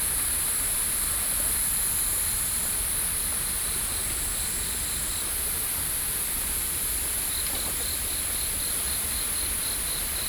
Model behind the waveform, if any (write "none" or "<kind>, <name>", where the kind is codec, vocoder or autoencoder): none